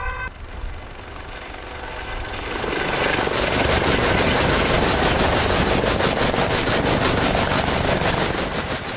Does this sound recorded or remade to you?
recorded